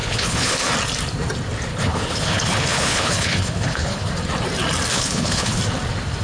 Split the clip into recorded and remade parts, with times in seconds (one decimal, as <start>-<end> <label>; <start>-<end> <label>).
0.0-0.7 remade; 0.7-1.7 recorded; 1.7-4.1 remade; 4.1-4.9 recorded; 4.9-5.6 remade; 5.6-6.2 recorded